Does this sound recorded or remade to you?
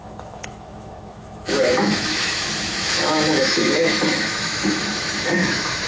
remade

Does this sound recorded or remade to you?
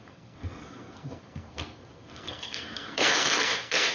remade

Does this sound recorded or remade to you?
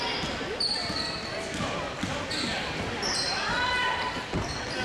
recorded